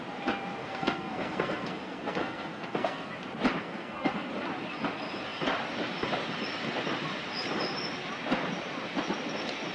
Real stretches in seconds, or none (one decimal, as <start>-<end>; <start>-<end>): 0.0-0.6; 3.1-3.6; 4.3-9.7